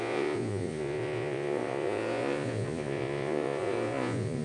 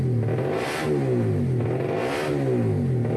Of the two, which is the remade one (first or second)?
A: first